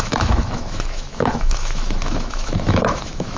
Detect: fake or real fake